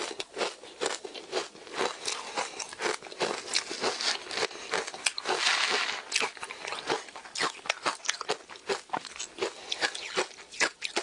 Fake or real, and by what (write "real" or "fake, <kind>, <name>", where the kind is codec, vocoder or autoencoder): real